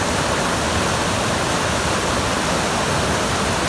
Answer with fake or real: real